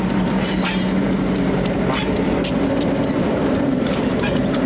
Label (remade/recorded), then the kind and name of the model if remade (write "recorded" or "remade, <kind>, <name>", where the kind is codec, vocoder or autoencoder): remade, vocoder, BigVGAN v2